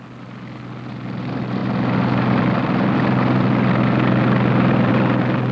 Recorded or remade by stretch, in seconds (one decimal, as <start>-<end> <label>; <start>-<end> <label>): 0.0-5.5 recorded